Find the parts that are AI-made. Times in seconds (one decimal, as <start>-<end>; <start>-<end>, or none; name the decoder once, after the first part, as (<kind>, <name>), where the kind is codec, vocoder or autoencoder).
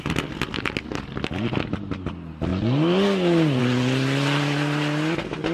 none